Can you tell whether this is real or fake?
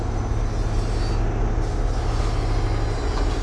real